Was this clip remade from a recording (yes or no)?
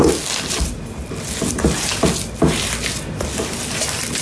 no